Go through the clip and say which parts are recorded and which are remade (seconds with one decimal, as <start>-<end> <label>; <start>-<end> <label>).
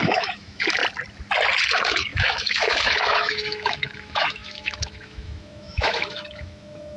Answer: 0.0-0.8 remade; 0.8-1.7 recorded; 1.7-7.0 remade